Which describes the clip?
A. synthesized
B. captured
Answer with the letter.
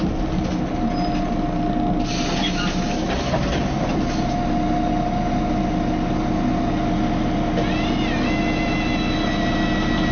B